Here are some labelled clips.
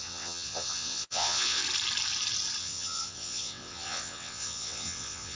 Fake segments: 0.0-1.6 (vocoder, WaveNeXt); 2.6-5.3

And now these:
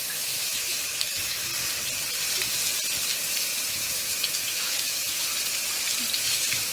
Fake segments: 0.0-1.5 (autoencoder, DAC-VAE); 3.7-5.3; 6.2-6.7